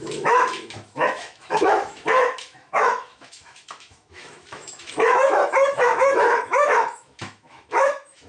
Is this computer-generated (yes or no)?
yes